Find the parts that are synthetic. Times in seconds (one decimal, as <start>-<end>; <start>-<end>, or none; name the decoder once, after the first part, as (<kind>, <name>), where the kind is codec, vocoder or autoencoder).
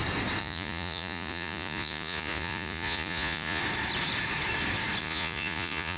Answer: 0.4-3.6 (vocoder, Vocos); 5.0-6.0